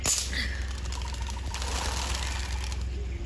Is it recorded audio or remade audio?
recorded